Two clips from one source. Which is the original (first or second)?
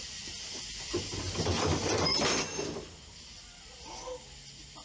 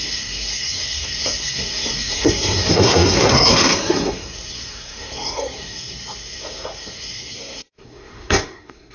first